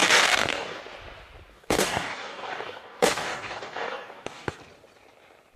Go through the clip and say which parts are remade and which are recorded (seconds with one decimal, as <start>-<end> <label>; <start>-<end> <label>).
0.0-0.8 remade; 0.8-1.5 recorded; 1.5-4.6 remade; 4.6-5.6 recorded